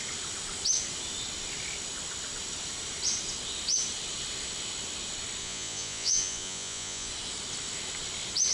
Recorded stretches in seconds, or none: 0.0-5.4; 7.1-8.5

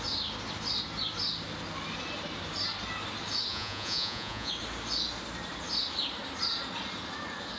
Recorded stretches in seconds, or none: 0.0-3.5; 4.5-7.6

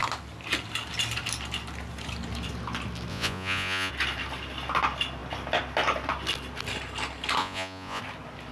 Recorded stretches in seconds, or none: 0.0-3.1; 3.9-7.4; 8.0-8.5

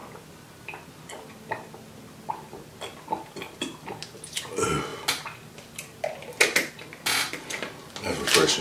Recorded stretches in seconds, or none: 0.0-8.6

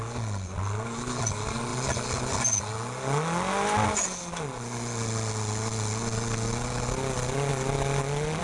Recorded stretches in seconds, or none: 0.0-8.4

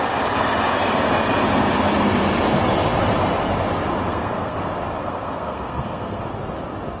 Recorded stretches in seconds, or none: 0.0-4.1; 4.6-5.0; 6.2-7.0